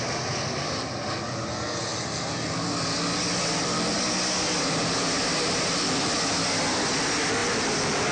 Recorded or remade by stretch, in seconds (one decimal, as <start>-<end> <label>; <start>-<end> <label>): 0.0-8.1 recorded